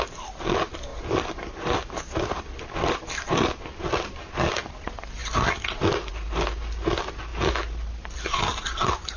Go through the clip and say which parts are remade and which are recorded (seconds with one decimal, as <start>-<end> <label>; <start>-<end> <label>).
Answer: 0.0-9.2 recorded